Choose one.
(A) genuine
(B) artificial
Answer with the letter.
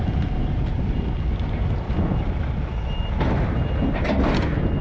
A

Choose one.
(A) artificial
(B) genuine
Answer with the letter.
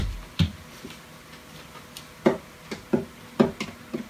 B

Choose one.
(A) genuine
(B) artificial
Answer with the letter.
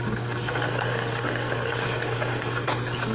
B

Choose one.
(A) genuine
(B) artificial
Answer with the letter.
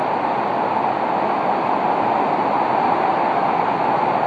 A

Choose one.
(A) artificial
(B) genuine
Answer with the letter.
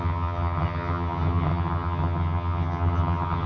A